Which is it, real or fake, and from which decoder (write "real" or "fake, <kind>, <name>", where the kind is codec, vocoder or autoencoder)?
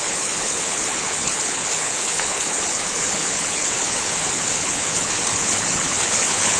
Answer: fake, codec, HILCodec